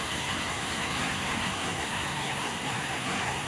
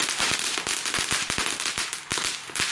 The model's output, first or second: first